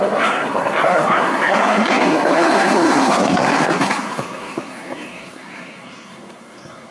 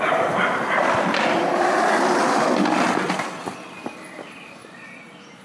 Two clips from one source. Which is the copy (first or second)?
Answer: first